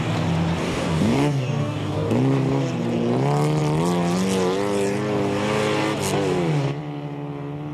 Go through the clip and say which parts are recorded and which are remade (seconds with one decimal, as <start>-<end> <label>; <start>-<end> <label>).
0.0-0.6 recorded; 0.6-2.1 remade; 2.1-7.7 recorded